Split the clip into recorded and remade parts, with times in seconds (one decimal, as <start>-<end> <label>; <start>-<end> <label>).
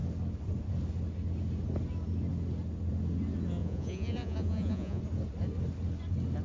0.0-3.6 recorded; 3.6-5.0 remade; 5.0-6.4 recorded